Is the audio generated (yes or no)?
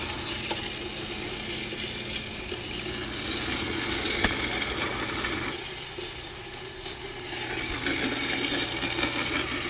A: no